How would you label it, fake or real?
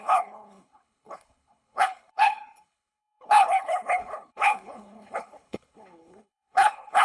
fake